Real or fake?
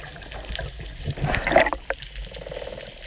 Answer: real